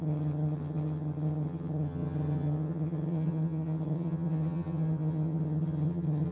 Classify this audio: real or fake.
fake